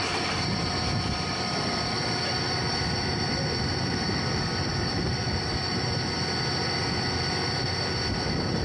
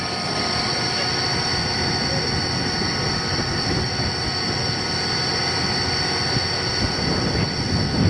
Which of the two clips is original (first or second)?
second